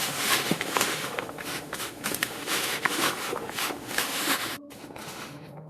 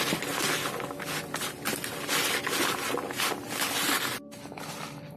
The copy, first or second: first